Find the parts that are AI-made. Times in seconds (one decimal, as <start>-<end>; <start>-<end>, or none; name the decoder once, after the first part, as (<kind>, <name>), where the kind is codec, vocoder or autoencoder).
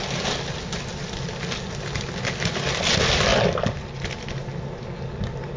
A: 0.9-1.6 (vocoder, BigVGAN v2)